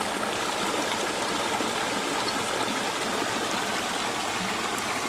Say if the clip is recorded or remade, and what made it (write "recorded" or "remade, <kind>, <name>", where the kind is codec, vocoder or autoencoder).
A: recorded